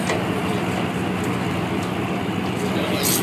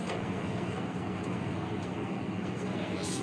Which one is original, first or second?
first